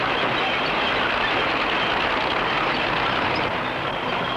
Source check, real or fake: real